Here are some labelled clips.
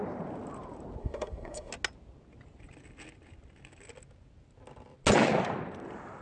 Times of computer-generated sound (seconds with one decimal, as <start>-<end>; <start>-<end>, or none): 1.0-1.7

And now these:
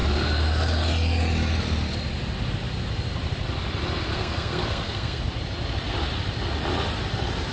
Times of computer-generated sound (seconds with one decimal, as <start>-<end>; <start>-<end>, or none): 4.1-5.2

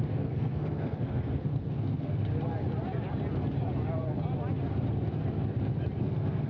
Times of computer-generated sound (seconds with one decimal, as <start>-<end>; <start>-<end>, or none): 0.0-2.2; 6.0-6.5

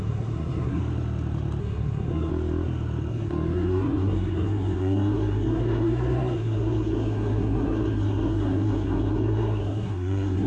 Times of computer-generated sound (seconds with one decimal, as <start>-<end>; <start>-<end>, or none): 0.0-0.8; 1.6-2.3; 3.1-10.5

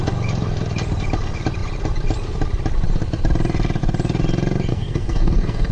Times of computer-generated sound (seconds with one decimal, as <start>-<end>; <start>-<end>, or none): 4.7-5.7

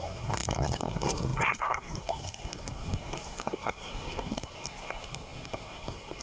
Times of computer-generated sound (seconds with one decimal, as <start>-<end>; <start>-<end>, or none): 0.0-6.2